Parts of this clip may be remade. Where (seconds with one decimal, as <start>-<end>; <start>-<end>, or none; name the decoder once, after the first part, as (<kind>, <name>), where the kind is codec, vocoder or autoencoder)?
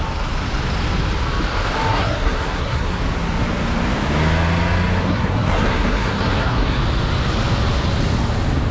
1.9-3.0 (codec, SNAC); 5.0-6.8